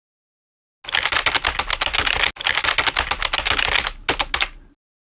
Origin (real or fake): real